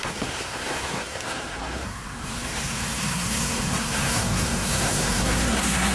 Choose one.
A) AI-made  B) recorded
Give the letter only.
A